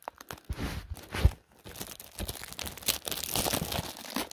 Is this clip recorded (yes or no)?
yes